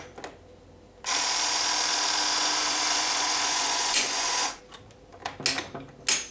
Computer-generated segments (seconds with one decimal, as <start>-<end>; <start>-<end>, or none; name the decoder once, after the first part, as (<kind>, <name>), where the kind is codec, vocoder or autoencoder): 2.3-4.6 (vocoder, Vocos)